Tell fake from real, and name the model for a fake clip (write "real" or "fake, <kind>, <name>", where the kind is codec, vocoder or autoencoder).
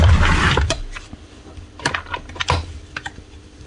fake, vocoder, BigVGAN v2